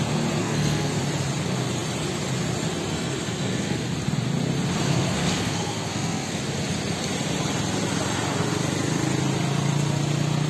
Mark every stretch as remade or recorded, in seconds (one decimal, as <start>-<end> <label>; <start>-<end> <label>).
0.0-0.4 recorded; 0.4-1.0 remade; 1.0-2.9 recorded; 2.9-3.9 remade; 3.9-4.9 recorded; 4.9-6.4 remade; 6.4-10.5 recorded